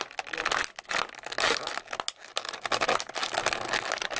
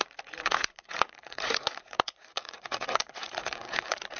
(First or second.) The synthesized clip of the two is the second